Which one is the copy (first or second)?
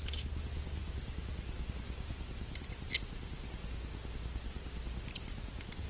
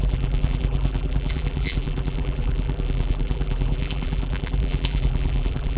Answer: second